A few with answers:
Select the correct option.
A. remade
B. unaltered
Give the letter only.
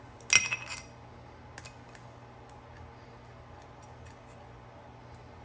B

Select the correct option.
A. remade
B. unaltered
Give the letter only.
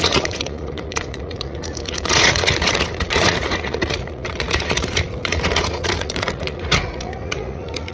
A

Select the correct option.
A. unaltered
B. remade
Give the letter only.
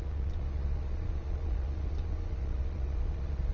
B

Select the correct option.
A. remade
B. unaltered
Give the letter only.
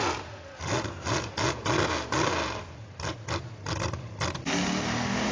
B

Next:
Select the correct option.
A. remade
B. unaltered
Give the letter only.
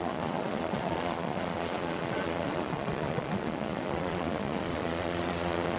A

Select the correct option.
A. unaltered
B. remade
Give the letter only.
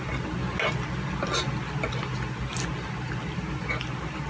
A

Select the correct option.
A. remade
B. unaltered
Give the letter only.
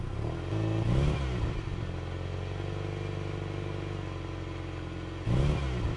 B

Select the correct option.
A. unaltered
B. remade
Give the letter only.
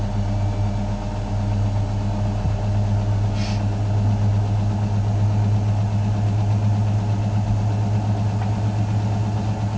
A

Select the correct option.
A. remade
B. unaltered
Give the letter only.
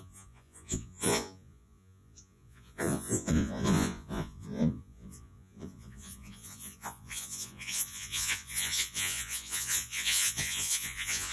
A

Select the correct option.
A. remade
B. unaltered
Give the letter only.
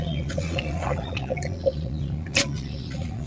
A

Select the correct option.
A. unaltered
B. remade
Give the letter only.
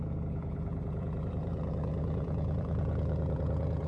B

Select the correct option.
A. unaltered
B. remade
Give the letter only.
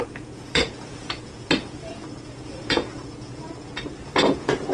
B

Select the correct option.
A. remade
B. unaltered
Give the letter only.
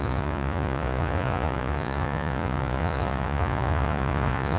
A